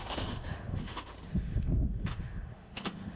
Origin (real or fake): fake